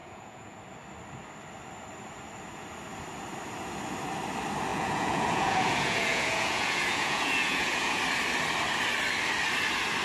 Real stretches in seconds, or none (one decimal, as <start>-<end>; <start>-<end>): 0.6-4.7; 8.0-10.0